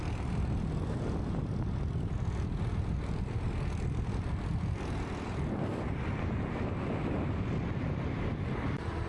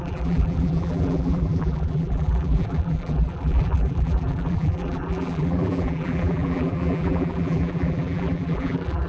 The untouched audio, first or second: first